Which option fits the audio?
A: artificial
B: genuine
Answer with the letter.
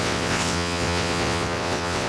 A